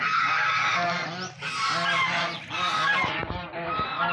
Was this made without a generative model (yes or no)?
yes